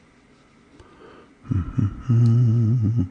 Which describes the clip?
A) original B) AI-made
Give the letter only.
A